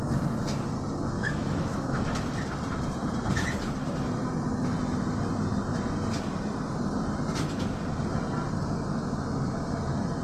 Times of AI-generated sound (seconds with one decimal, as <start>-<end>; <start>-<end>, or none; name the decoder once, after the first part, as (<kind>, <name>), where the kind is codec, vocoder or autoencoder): 1.2-2.0 (autoencoder, DAC-VAE)